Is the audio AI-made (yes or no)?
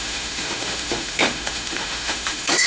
yes